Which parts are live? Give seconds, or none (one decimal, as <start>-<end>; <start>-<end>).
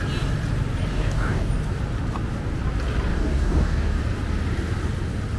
0.0-0.9; 1.5-3.1; 4.0-5.4